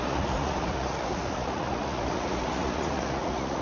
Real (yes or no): no